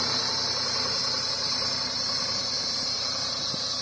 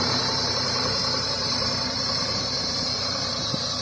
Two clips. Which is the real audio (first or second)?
first